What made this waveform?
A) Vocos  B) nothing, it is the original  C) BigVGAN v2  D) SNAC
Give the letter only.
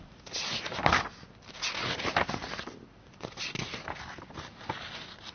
B